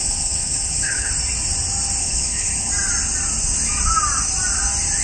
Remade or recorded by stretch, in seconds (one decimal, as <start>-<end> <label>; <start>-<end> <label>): 0.0-1.1 remade; 1.1-2.0 recorded; 2.0-2.7 remade; 2.7-5.0 recorded